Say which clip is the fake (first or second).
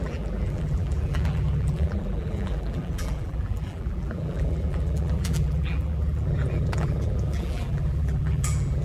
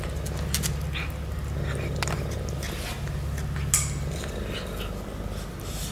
first